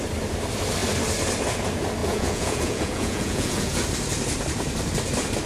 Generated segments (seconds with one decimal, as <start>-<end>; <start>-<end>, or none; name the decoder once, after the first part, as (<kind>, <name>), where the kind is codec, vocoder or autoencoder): 2.0-3.8 (vocoder, Vocos)